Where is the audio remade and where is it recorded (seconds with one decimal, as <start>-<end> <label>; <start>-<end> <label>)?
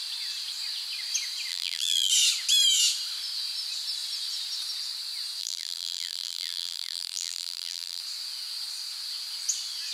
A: 0.0-1.5 recorded; 1.5-2.1 remade; 2.1-5.4 recorded; 5.4-8.0 remade; 8.0-9.9 recorded